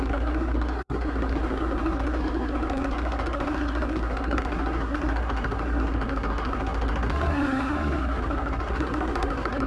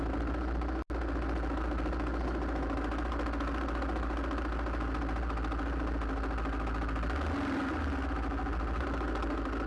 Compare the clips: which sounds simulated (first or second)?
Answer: first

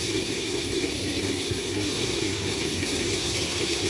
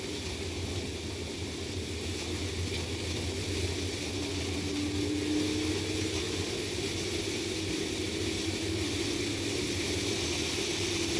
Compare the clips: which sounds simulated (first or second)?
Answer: first